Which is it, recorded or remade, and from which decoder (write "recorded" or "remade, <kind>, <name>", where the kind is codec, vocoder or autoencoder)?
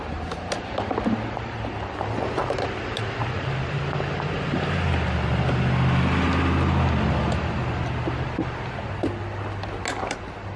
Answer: recorded